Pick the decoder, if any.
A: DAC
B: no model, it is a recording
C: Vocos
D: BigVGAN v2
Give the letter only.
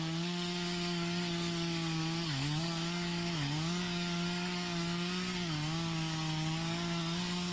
A